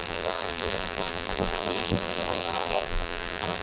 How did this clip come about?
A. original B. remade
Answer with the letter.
B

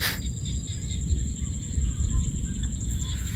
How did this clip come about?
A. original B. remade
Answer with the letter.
A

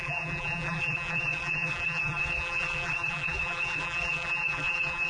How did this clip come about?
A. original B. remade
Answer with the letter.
B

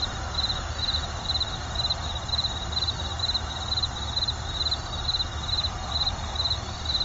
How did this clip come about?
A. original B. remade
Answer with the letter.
A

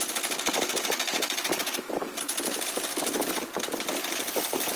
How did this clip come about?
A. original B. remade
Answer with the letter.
A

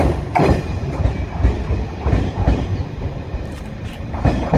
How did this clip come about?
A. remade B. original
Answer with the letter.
A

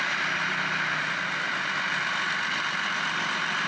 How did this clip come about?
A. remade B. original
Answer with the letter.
A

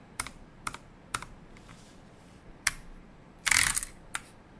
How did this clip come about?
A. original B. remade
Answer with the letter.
B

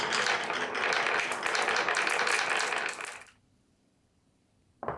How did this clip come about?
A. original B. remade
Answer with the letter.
B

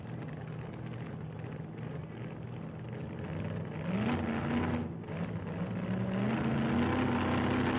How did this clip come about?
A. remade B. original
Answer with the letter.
B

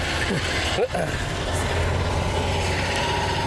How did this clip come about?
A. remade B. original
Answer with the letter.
B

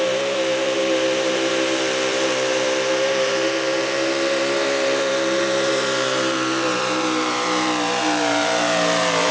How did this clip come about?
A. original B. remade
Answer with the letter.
B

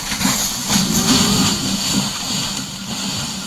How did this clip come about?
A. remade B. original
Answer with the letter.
B